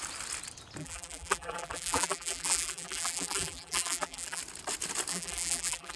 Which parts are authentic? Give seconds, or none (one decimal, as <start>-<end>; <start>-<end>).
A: 0.0-0.8; 4.4-5.1